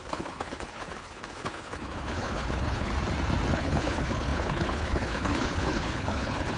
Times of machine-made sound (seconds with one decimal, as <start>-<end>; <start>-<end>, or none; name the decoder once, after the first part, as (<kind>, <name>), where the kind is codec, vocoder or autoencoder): 0.0-2.9 (codec, HILCodec); 3.5-6.6